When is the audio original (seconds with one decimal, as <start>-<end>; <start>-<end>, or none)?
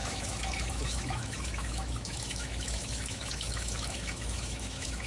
none